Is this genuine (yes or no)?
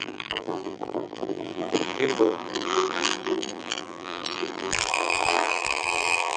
no